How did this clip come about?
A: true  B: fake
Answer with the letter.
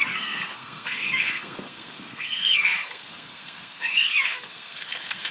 B